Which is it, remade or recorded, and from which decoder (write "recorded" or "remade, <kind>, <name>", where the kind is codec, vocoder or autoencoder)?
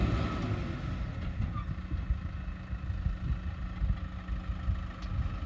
recorded